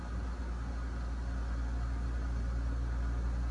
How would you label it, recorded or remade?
recorded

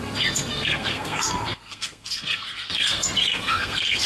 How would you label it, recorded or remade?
remade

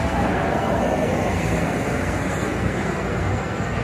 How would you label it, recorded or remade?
remade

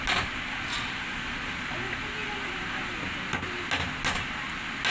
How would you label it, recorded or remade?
recorded